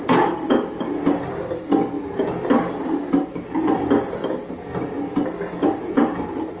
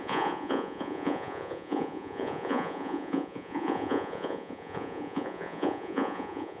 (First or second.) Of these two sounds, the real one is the first